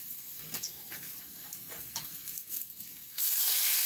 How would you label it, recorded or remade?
remade